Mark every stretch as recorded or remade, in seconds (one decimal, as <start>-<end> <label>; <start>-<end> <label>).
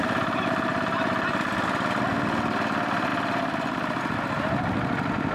0.0-3.1 remade; 3.1-4.0 recorded; 4.0-5.3 remade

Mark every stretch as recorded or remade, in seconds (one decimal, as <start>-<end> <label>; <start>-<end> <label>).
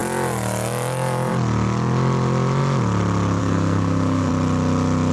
0.0-3.4 recorded; 3.4-4.3 remade; 4.3-5.1 recorded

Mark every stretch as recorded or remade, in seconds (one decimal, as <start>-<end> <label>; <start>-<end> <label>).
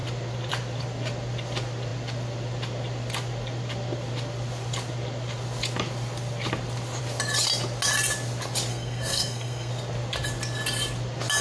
0.0-8.7 recorded; 8.7-9.7 remade; 9.7-11.4 recorded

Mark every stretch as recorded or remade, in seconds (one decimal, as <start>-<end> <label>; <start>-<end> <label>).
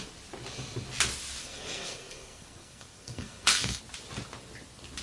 0.0-1.4 recorded; 1.4-3.8 remade; 3.8-5.0 recorded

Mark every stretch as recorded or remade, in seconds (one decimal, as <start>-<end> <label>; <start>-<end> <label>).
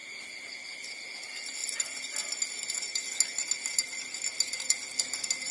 0.0-5.5 recorded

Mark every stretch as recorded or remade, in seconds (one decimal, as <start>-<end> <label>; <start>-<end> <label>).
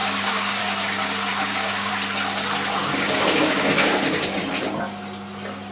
0.0-0.6 remade; 0.6-1.3 recorded; 1.3-1.9 remade; 1.9-2.8 recorded; 2.8-4.2 remade; 4.2-5.7 recorded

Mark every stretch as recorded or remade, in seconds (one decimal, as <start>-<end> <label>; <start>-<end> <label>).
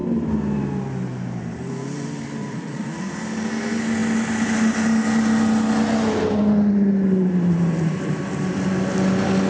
0.0-2.4 recorded; 2.4-3.2 remade; 3.2-9.5 recorded